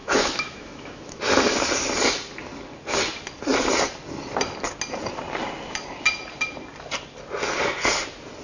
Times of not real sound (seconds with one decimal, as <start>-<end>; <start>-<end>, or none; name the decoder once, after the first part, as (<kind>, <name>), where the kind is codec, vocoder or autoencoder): 0.0-1.2 (autoencoder, DAC-VAE)